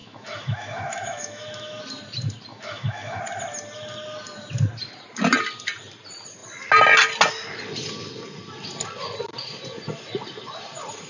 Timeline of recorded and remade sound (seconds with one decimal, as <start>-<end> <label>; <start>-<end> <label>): 0.0-1.8 remade; 1.8-2.5 recorded; 2.5-3.2 remade; 3.2-11.1 recorded